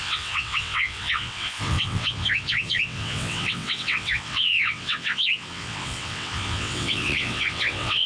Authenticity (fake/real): fake